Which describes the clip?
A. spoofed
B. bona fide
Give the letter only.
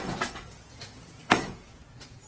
A